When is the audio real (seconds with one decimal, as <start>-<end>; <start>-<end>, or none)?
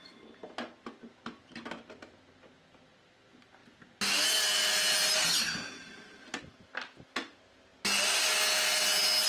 0.0-9.3